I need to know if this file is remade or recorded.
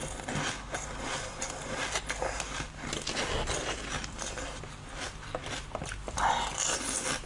recorded